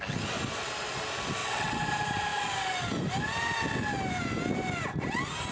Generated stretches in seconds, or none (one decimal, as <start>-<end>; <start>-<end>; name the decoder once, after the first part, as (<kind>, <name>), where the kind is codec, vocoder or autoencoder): 1.4-1.9 (vocoder, WaveNeXt)